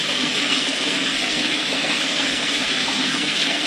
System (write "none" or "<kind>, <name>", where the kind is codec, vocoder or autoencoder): codec, SNAC